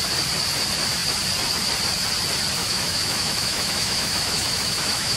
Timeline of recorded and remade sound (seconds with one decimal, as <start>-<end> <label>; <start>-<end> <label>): 0.0-2.6 recorded; 2.6-5.2 remade

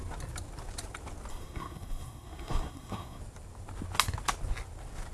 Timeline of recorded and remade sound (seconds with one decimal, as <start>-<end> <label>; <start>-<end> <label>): 0.0-1.3 recorded; 1.3-3.2 remade; 3.2-5.1 recorded

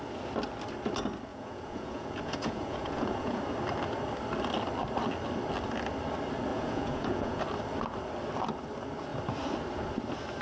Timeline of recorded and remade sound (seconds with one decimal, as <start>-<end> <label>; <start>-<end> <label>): 0.0-1.3 recorded; 1.3-3.4 remade; 3.4-6.5 recorded; 6.5-7.4 remade; 7.4-10.4 recorded

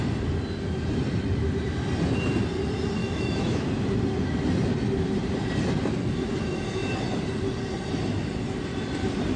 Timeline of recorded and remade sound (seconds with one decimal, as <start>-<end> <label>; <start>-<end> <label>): 0.0-3.0 recorded; 3.0-3.7 remade; 3.7-9.4 recorded

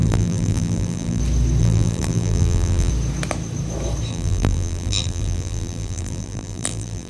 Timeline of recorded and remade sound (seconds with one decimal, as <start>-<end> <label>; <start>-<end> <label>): 0.0-1.2 remade; 1.2-1.6 recorded; 1.6-2.9 remade; 2.9-4.1 recorded; 4.1-7.1 remade